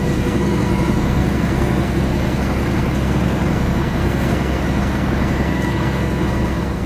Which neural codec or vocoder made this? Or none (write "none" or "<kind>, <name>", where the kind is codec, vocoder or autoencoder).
codec, SNAC